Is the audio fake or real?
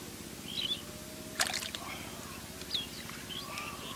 real